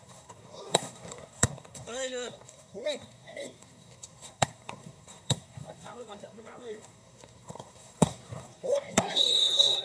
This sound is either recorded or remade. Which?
remade